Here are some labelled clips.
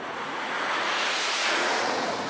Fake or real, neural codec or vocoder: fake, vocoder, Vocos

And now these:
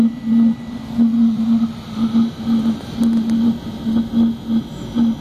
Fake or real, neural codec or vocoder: real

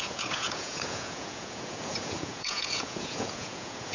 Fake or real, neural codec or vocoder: fake, vocoder, Vocos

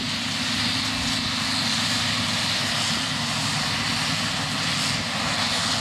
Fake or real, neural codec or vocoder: real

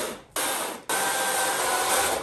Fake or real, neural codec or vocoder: real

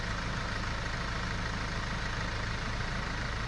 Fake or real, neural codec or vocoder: fake, vocoder, BigVGAN v2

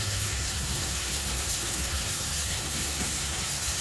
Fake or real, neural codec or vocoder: fake, codec, SNAC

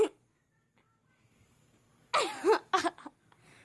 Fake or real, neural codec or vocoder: real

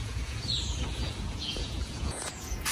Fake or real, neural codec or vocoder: fake, vocoder, Vocos